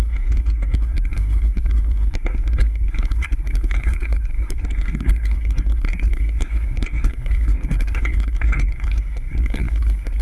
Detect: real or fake fake